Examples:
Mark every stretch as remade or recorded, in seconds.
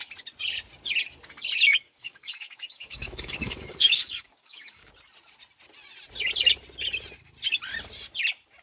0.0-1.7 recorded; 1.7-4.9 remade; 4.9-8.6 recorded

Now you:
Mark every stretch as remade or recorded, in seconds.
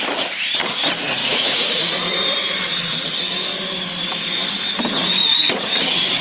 0.0-1.2 recorded; 1.2-1.8 remade; 1.8-6.2 recorded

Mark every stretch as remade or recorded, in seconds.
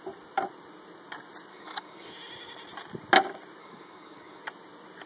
0.0-1.5 recorded; 1.5-2.1 remade; 2.1-3.6 recorded; 3.6-4.4 remade; 4.4-5.1 recorded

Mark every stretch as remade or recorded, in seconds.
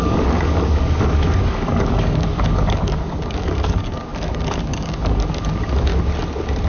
0.0-5.9 remade; 5.9-6.7 recorded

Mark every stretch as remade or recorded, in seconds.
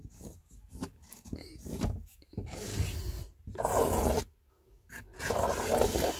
0.0-2.7 remade; 2.7-4.5 recorded; 4.5-5.1 remade; 5.1-6.2 recorded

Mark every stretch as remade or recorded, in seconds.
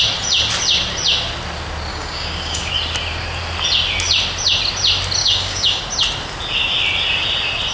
0.0-1.9 recorded; 1.9-2.7 remade; 2.7-5.2 recorded; 5.2-5.8 remade; 5.8-7.7 recorded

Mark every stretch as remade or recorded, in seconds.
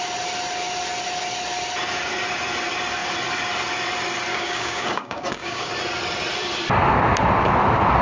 0.0-4.3 recorded; 4.3-5.7 remade; 5.7-8.0 recorded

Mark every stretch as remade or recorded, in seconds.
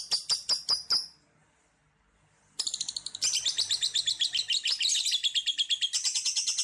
0.0-6.6 recorded